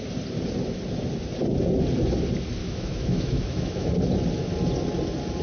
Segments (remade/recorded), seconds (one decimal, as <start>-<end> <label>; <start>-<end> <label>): 0.0-2.6 recorded; 2.6-3.9 remade; 3.9-5.4 recorded